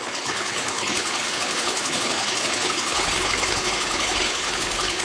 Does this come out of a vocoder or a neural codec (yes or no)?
yes